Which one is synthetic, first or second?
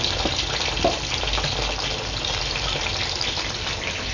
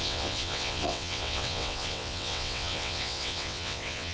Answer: second